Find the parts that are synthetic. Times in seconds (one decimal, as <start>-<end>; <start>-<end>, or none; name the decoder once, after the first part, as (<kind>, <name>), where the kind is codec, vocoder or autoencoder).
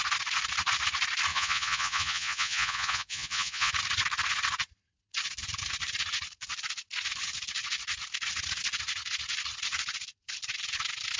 1.3-3.7 (vocoder, Vocos)